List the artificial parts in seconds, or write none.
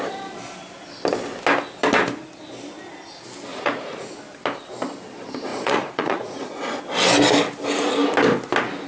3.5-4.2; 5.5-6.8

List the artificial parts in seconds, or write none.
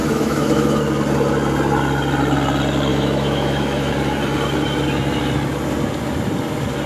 0.0-0.8; 2.9-3.9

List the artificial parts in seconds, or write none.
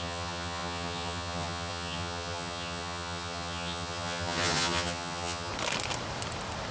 0.0-5.5